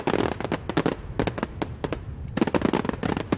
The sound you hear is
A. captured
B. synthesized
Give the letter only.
A